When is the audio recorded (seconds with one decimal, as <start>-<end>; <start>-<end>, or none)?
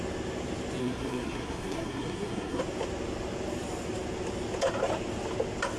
0.0-0.8; 2.6-5.8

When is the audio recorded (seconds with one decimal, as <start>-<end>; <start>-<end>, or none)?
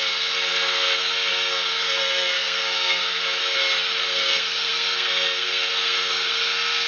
3.4-4.0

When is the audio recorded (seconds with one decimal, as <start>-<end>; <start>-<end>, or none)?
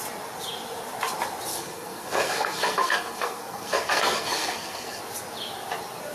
0.0-1.5; 5.0-6.1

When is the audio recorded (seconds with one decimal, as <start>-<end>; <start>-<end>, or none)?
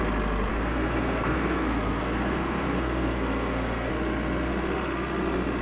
0.0-0.5; 3.9-5.6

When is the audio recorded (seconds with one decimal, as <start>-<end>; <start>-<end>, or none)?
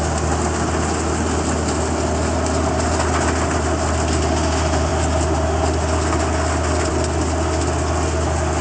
0.0-8.6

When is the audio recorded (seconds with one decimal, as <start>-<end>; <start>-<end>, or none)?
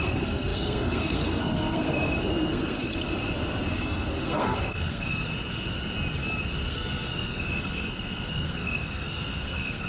2.9-3.7; 5.1-6.7